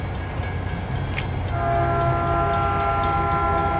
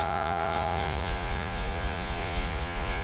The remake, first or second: second